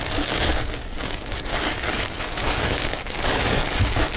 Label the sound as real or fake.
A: fake